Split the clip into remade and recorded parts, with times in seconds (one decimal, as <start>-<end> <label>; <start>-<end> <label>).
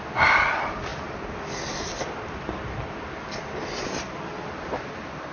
0.0-5.3 recorded